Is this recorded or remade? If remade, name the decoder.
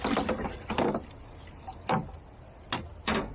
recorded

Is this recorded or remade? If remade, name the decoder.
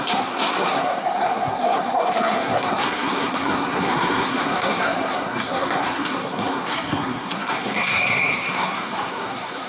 remade, codec, SNAC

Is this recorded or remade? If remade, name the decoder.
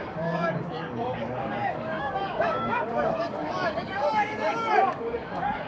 remade, codec, DAC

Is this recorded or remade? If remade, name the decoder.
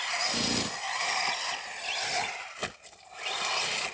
recorded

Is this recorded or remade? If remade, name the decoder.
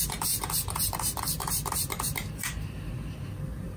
remade, vocoder, BigVGAN v2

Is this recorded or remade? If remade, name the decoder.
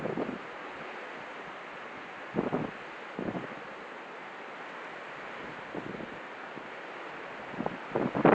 recorded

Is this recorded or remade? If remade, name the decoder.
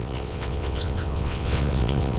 remade, vocoder, WaveNeXt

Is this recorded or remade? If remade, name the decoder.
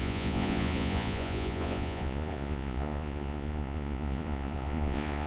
remade, vocoder, Vocos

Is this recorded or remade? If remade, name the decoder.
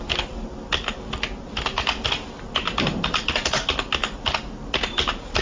recorded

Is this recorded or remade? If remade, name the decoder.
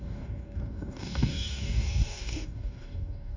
remade, codec, DAC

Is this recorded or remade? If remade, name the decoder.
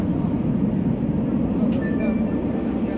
recorded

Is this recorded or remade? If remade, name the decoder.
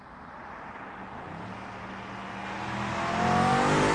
recorded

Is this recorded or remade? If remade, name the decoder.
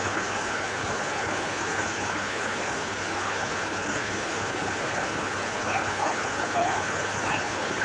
remade, codec, HILCodec